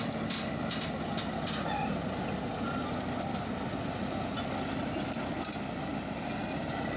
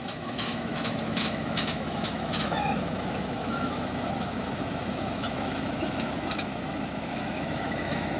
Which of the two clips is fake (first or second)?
second